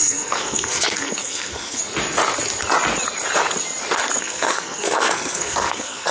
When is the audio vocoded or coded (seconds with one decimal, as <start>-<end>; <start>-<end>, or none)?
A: 0.0-1.8; 4.2-6.1